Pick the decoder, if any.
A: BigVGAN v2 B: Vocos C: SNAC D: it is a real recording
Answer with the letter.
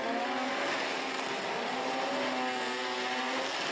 D